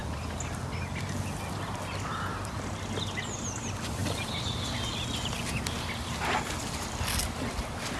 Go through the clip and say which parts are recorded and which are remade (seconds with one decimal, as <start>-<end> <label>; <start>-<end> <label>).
0.0-8.0 recorded